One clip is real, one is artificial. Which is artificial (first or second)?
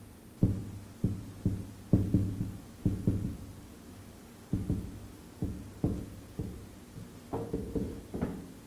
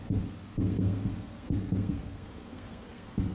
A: second